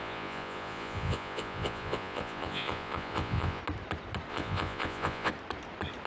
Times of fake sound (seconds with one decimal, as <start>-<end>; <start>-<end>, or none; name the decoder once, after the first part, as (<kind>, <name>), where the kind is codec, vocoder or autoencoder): 0.0-3.6 (vocoder, Vocos); 4.3-5.3